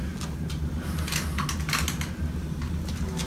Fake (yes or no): no